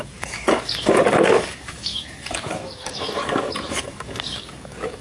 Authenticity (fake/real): fake